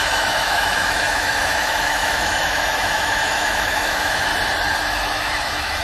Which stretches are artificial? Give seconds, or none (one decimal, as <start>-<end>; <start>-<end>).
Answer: 0.0-4.3; 4.8-5.8